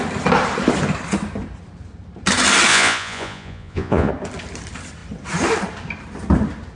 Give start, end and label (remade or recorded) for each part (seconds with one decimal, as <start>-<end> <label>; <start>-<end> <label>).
0.0-2.7 recorded; 2.7-4.1 remade; 4.1-6.8 recorded